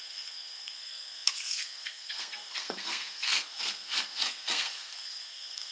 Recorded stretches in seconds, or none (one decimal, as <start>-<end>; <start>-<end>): none